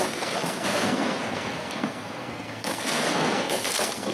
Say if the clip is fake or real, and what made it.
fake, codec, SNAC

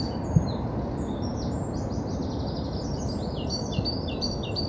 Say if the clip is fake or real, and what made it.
real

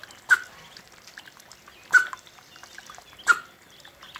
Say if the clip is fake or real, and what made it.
real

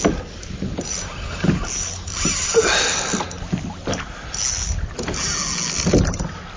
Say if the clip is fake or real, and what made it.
real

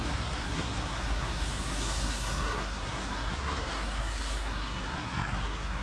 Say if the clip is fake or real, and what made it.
fake, codec, SNAC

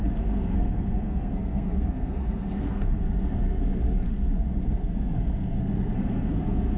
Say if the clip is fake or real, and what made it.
fake, codec, SNAC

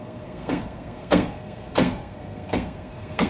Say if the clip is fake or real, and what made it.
fake, codec, SNAC